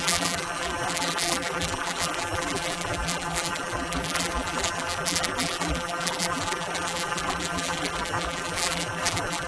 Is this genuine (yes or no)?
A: no